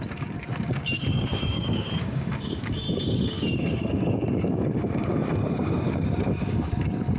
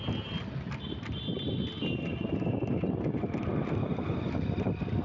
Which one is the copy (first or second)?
first